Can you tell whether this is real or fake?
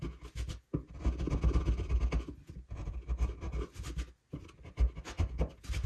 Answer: real